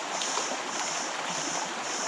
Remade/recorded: recorded